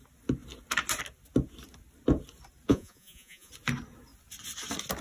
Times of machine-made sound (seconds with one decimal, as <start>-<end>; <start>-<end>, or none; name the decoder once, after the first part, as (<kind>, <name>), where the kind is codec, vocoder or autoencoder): 2.7-3.5 (vocoder, Vocos)